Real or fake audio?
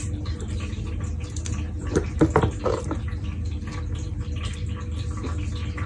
real